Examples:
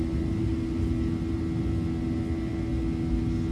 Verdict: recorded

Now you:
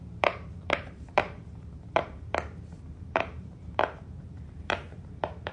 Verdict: remade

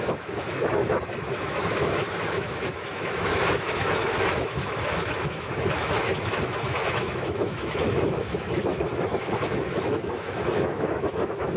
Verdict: remade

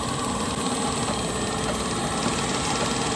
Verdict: recorded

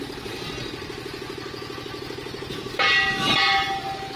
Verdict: recorded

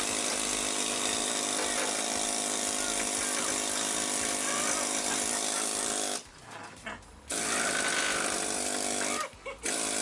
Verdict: recorded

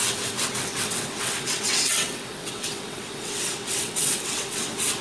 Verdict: remade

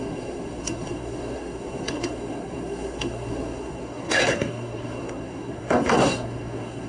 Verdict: remade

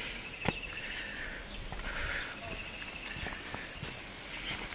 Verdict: recorded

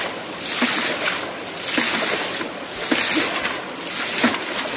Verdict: recorded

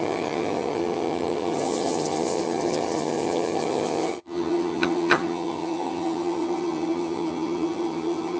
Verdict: remade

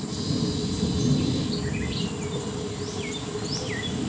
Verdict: recorded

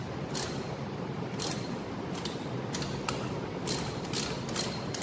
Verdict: recorded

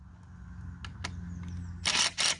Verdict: recorded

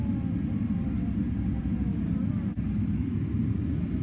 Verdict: recorded